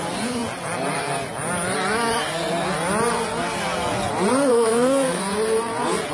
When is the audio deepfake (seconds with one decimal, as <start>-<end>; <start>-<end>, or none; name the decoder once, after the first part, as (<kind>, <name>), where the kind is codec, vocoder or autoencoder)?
4.5-5.2 (codec, SNAC)